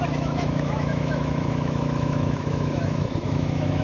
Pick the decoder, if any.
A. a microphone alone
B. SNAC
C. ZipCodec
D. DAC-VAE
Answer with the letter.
D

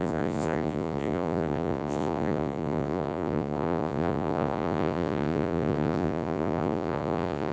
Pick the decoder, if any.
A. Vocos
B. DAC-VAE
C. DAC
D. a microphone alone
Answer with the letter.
A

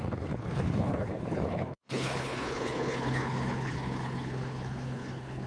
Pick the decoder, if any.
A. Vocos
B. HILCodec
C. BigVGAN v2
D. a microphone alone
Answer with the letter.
B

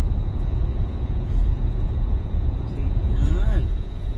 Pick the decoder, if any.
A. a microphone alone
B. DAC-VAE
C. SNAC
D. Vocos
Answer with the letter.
D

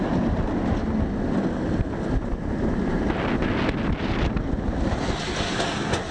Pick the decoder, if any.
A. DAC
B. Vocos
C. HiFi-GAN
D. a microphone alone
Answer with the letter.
D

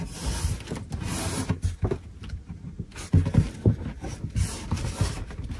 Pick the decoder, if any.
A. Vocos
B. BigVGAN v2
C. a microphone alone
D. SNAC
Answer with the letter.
C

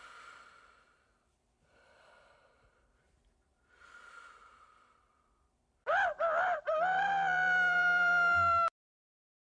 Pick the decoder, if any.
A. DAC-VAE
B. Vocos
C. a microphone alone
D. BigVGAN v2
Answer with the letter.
D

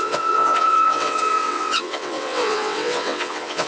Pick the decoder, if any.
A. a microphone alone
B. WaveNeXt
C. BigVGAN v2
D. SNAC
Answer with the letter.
B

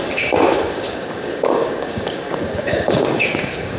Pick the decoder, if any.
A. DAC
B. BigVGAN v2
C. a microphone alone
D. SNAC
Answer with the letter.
A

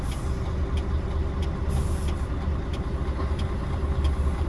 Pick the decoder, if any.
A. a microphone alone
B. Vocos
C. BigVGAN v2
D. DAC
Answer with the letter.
A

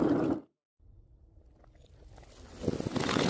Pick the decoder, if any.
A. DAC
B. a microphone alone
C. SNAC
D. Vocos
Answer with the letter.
B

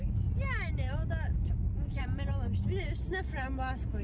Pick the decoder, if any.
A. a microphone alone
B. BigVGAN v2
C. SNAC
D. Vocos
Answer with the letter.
A